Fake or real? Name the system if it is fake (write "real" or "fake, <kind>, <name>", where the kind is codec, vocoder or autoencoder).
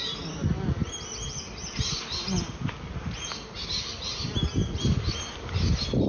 real